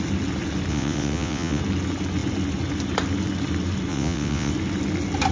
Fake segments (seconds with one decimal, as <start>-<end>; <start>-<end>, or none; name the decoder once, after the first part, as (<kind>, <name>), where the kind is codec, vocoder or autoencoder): 0.7-1.6 (vocoder, WaveNeXt); 3.9-4.5